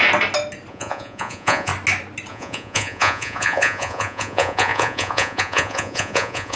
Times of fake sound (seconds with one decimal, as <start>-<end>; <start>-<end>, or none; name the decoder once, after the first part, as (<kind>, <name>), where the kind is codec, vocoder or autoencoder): 0.7-1.7 (vocoder, Vocos); 2.3-6.6